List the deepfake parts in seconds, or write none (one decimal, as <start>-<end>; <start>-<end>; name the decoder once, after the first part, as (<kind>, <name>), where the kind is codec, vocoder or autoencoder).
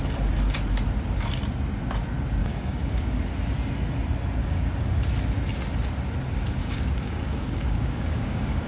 2.4-3.2 (codec, DAC); 4.4-5.0; 6.6-8.7